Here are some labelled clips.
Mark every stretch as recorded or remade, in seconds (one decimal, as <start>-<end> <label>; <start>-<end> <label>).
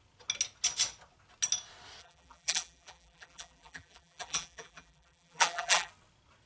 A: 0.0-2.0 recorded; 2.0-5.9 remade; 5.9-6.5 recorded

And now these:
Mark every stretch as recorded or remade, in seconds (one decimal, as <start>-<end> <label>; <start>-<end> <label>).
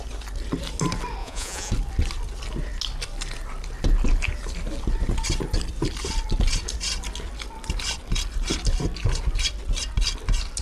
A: 0.0-1.2 recorded; 1.2-1.7 remade; 1.7-10.6 recorded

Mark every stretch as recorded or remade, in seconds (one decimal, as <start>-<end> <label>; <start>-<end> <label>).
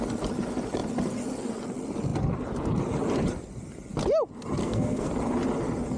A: 0.0-4.6 recorded; 4.6-5.1 remade; 5.1-6.0 recorded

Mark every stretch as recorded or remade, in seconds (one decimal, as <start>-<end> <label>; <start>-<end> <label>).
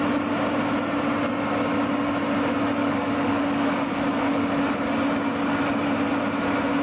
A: 0.0-2.8 recorded; 2.8-4.6 remade; 4.6-6.8 recorded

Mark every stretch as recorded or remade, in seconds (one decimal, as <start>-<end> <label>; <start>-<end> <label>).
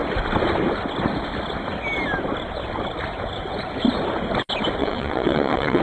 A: 0.0-4.8 recorded; 4.8-5.8 remade